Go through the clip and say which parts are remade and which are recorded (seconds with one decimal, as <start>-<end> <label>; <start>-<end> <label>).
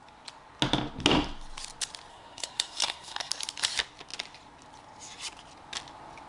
0.0-2.1 recorded; 2.1-3.3 remade; 3.3-6.3 recorded